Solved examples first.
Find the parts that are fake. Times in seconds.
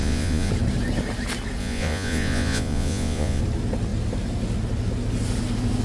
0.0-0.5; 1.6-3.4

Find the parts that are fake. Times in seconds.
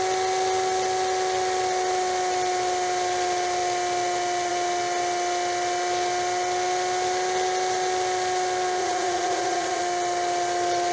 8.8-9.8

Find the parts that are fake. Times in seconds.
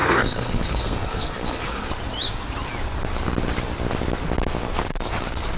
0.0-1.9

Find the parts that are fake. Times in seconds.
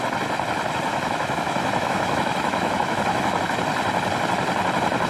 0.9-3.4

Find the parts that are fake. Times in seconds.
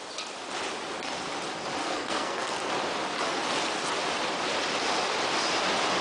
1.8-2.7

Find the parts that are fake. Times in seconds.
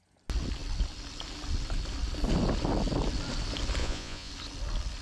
3.8-4.3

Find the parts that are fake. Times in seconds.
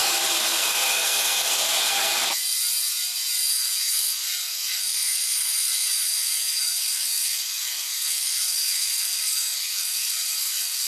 0.0-2.4; 3.5-10.9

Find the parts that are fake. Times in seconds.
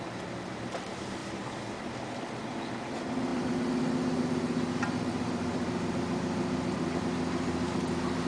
1.2-2.1